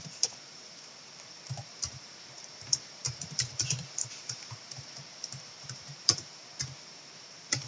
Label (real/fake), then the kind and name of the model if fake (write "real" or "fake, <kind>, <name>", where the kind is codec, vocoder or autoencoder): fake, vocoder, BigVGAN v2